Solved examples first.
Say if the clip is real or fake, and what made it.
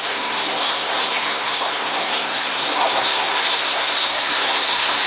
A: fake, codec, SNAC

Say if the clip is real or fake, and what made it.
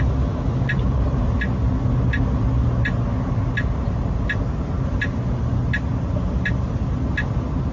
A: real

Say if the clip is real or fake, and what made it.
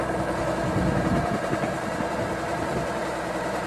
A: fake, vocoder, BigVGAN v2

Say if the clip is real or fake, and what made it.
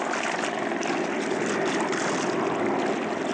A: real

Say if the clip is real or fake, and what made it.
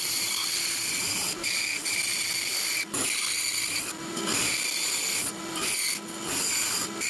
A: real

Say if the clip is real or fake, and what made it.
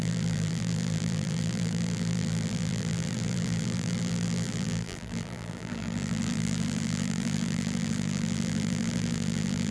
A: fake, vocoder, BigVGAN v2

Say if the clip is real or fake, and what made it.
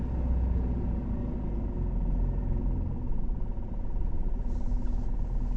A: real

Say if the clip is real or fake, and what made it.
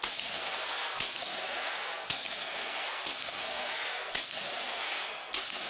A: fake, codec, SNAC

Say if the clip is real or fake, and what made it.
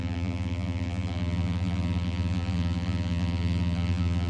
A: fake, vocoder, BigVGAN v2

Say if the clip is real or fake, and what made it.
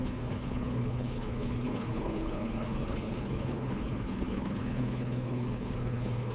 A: fake, codec, HILCodec